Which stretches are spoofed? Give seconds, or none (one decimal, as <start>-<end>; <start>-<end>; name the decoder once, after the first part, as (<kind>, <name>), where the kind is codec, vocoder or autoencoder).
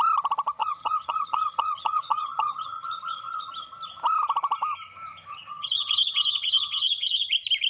0.6-3.5 (vocoder, HiFi-GAN); 5.3-7.3